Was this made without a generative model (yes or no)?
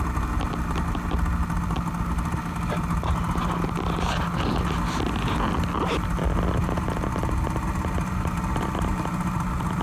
yes